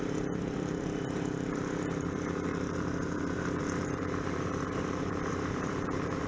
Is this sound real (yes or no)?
no